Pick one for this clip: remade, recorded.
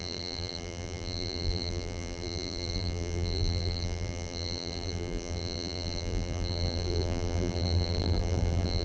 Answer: remade